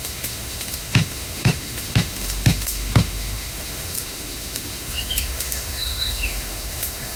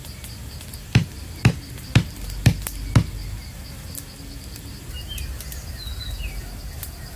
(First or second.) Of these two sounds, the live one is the second